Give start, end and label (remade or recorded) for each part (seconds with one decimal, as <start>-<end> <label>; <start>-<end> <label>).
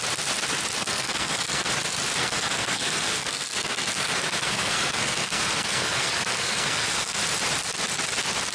0.0-0.8 recorded; 0.8-1.7 remade; 1.7-2.2 recorded; 2.2-7.2 remade; 7.2-8.5 recorded